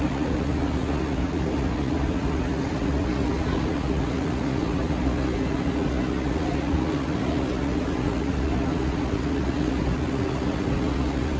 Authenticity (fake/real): fake